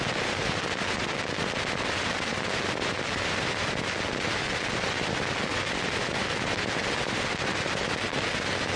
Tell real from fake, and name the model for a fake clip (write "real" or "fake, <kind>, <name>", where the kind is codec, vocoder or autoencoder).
real